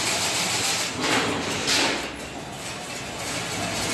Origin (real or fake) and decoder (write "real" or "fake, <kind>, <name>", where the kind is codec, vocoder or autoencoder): real